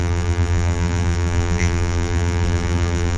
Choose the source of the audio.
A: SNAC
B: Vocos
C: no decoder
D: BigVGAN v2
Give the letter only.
D